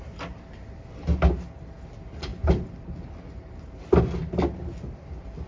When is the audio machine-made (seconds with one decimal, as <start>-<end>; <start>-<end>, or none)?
none